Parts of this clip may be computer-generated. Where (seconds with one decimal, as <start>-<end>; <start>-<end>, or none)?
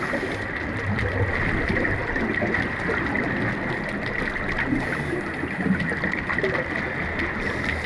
none